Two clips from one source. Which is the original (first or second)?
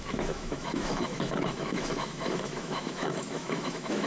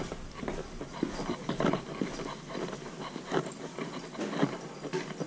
second